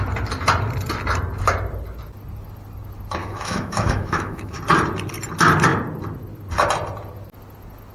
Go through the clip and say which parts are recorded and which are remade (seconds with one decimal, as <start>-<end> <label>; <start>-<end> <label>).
0.0-3.2 recorded; 3.2-4.6 remade; 4.6-7.9 recorded